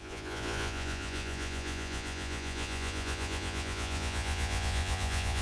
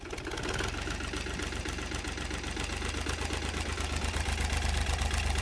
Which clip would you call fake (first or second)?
first